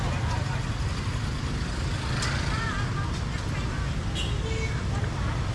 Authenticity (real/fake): real